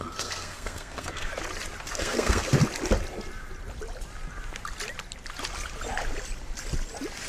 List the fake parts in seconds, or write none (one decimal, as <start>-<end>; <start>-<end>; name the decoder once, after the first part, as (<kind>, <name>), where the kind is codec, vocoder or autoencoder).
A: 0.0-1.3 (codec, SNAC); 1.9-2.6